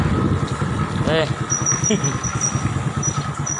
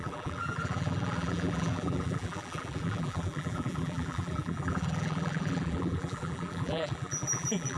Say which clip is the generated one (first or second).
second